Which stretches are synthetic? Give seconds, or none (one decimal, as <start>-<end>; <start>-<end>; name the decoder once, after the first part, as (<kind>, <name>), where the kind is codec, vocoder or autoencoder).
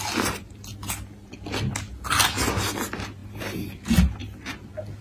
3.2-3.7 (vocoder, BigVGAN v2)